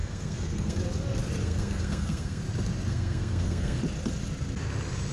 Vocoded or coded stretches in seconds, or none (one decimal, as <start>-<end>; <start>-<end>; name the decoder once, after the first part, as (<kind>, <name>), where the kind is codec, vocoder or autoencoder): 0.0-0.8 (codec, SNAC); 1.4-2.4; 2.9-3.8